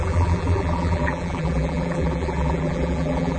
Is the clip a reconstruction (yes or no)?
yes